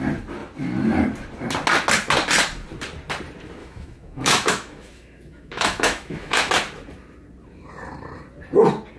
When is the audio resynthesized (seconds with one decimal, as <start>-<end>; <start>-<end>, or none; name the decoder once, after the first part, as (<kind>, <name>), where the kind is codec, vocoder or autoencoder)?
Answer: 3.6-6.5 (autoencoder, DAC-VAE)